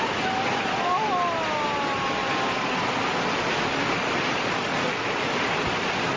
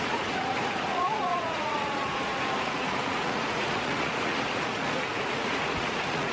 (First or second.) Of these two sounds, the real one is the first